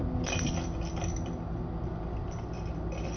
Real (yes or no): yes